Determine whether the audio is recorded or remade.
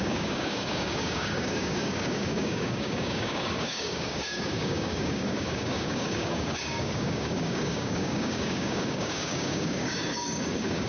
remade